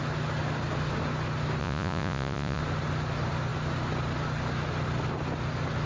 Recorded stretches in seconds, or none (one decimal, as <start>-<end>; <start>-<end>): 0.0-1.6; 2.6-5.9